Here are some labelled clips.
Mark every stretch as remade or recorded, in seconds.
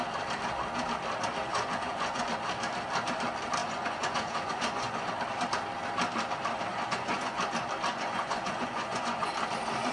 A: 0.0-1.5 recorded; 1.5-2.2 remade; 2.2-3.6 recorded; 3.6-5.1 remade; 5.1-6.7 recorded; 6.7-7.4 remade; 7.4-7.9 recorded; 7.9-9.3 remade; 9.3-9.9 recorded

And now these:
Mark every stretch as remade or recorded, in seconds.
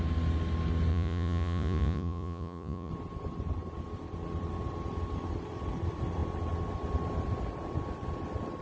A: 0.0-0.9 recorded; 0.9-2.9 remade; 2.9-8.6 recorded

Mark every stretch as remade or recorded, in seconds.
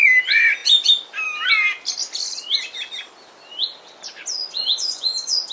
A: 0.0-4.4 recorded; 4.4-5.5 remade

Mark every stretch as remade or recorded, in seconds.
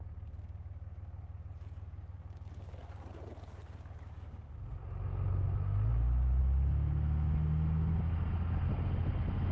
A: 0.0-9.5 recorded